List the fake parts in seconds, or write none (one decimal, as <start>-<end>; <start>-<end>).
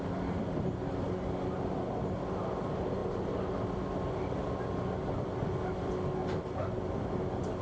none